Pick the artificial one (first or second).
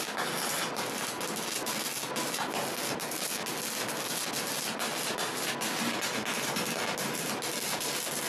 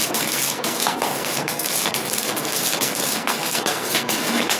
second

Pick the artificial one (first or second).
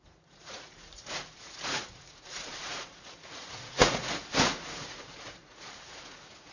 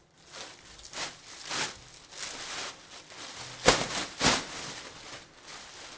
first